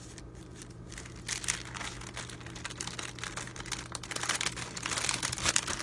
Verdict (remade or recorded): recorded